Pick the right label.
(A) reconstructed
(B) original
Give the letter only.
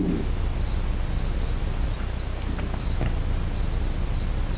B